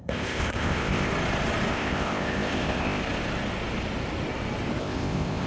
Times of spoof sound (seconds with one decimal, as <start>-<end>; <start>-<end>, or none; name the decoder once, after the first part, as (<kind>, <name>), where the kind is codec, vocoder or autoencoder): 0.0-1.1 (codec, ZipCodec); 1.7-3.0; 4.8-5.5